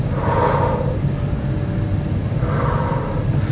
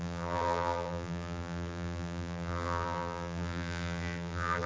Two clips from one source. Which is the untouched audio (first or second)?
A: first